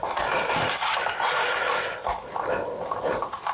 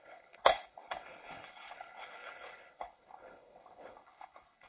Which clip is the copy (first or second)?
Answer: second